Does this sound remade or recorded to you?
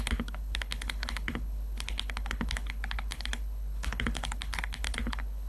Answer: remade